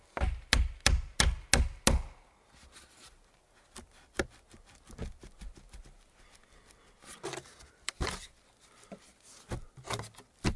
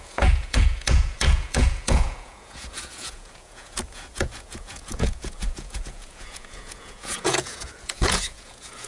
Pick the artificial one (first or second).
second